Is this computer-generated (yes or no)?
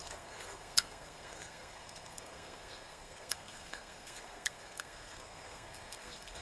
yes